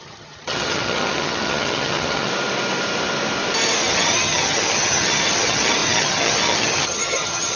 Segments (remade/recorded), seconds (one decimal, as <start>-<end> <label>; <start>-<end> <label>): 0.0-2.3 remade; 2.3-3.9 recorded; 3.9-7.6 remade

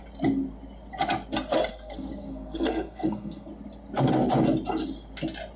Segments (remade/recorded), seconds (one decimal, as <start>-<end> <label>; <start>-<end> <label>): 0.0-1.7 recorded; 1.7-3.5 remade; 3.5-5.6 recorded

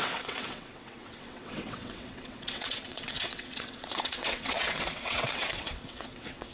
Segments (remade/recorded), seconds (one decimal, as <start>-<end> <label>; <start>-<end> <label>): 0.0-6.5 remade

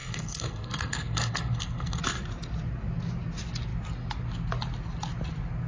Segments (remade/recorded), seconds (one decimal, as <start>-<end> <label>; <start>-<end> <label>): 0.0-2.0 remade; 2.0-5.7 recorded